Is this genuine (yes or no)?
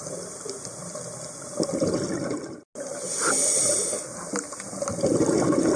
yes